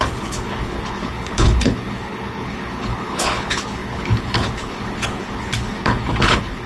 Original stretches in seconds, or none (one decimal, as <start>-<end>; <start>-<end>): none